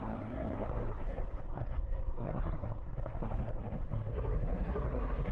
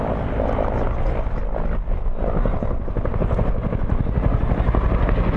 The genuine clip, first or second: second